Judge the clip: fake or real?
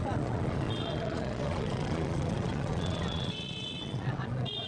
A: fake